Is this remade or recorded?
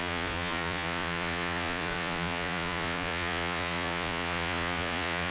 remade